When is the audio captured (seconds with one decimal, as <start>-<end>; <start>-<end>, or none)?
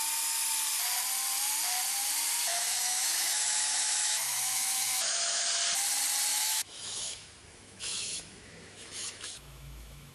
0.0-2.5; 5.4-6.3